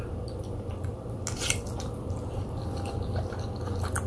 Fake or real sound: real